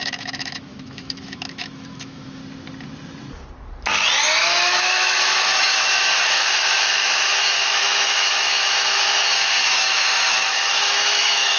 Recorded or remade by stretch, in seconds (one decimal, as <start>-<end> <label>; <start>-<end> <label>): 0.0-2.4 remade; 2.4-4.4 recorded; 4.4-11.6 remade